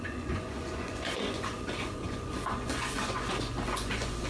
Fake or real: fake